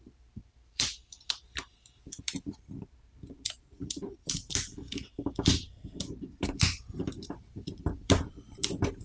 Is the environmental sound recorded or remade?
remade